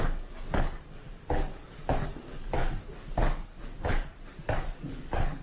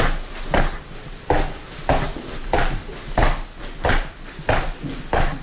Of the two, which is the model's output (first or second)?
first